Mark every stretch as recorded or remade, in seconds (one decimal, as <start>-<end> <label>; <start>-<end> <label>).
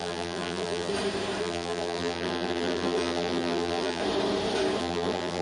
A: 0.0-0.9 remade; 0.9-1.4 recorded; 1.4-4.0 remade; 4.0-4.8 recorded; 4.8-5.4 remade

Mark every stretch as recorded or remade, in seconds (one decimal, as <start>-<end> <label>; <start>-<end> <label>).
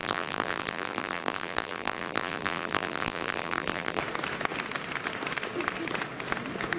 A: 0.0-4.0 remade; 4.0-6.8 recorded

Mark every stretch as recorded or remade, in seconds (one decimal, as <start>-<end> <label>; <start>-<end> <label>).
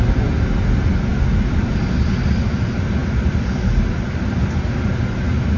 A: 0.0-1.1 recorded; 1.1-1.6 remade; 1.6-3.0 recorded; 3.0-4.4 remade; 4.4-5.6 recorded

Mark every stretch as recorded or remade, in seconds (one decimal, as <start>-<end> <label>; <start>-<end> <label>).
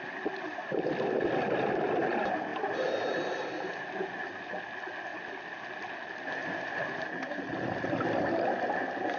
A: 0.0-6.4 recorded; 6.4-7.4 remade; 7.4-9.2 recorded